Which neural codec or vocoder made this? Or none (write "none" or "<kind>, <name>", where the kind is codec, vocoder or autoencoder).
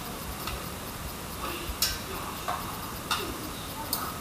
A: none